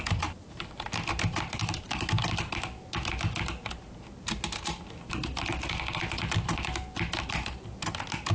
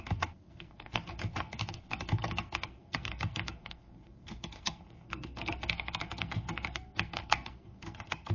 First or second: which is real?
first